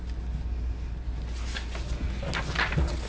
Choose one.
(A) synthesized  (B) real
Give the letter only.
B